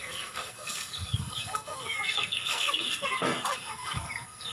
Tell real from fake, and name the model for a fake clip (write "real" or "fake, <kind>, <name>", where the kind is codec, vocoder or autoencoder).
fake, codec, SNAC